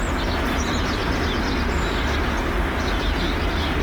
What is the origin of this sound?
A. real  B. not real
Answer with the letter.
A